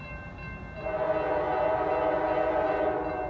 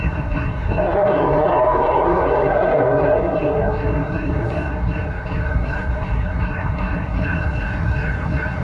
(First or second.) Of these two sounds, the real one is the first